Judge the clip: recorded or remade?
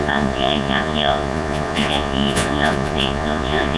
remade